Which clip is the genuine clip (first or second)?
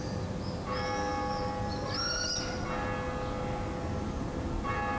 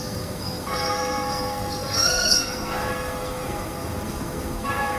first